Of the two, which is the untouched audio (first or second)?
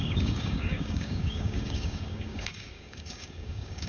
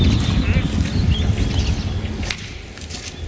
second